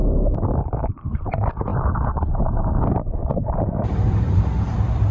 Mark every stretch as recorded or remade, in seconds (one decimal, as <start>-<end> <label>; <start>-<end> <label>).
0.0-0.9 recorded; 0.9-5.1 remade